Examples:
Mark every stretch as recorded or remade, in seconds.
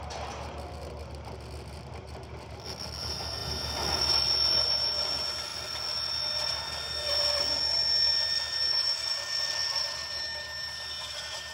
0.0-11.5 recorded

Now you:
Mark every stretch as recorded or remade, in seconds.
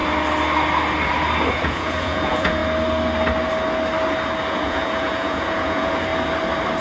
0.0-1.5 recorded; 1.5-2.6 remade; 2.6-4.5 recorded; 4.5-6.1 remade; 6.1-6.8 recorded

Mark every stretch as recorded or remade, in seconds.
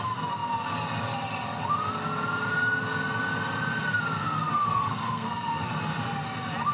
0.0-4.2 recorded; 4.2-5.7 remade; 5.7-6.7 recorded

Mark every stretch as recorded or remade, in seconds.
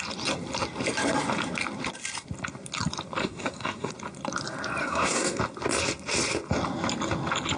0.0-3.2 recorded; 3.2-3.9 remade; 3.9-4.8 recorded; 4.8-5.4 remade; 5.4-7.6 recorded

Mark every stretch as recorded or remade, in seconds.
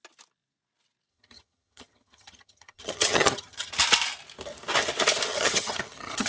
0.0-1.1 recorded; 1.1-3.7 remade; 3.7-5.3 recorded; 5.3-6.3 remade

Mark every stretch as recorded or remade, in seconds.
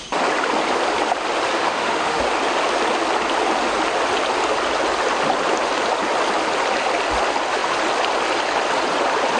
0.0-1.5 recorded; 1.5-2.2 remade; 2.2-9.4 recorded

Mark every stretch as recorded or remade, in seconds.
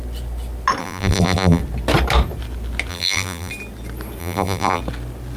0.0-0.8 recorded; 0.8-1.6 remade; 1.6-2.9 recorded; 2.9-3.5 remade; 3.5-4.2 recorded; 4.2-4.8 remade; 4.8-5.4 recorded